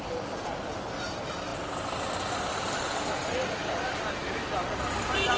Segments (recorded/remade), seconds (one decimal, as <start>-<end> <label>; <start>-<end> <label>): 0.0-5.4 recorded

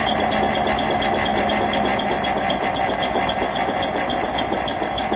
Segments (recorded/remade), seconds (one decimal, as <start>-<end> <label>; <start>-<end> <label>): 0.0-5.2 recorded

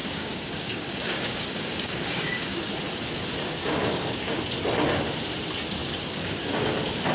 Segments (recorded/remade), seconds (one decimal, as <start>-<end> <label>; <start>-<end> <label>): 0.0-2.7 remade; 2.7-3.4 recorded; 3.4-4.4 remade; 4.4-5.8 recorded; 5.8-6.6 remade; 6.6-7.1 recorded

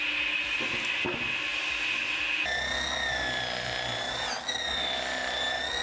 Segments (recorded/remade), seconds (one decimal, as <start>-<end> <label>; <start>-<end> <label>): 0.0-5.8 recorded

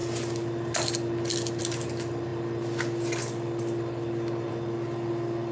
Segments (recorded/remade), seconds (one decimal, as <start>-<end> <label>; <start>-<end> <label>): 0.0-5.5 recorded

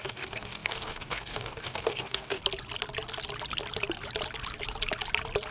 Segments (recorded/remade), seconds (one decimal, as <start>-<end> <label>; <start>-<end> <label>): 0.0-2.4 remade; 2.4-5.5 recorded

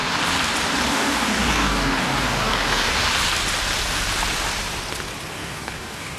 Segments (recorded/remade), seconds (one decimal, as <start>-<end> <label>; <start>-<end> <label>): 0.0-0.9 recorded; 0.9-2.9 remade; 2.9-5.3 recorded; 5.3-6.2 remade

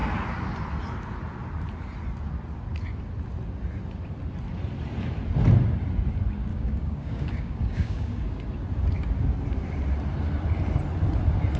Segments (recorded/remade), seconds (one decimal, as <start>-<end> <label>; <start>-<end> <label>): 0.0-6.5 recorded; 6.5-8.2 remade; 8.2-11.6 recorded